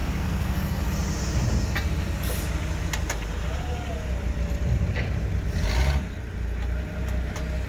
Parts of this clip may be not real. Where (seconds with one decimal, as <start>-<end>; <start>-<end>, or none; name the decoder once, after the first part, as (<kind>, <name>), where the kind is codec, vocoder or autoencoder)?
0.0-0.8 (codec, SNAC)